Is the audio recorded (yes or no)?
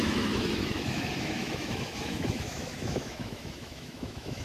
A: no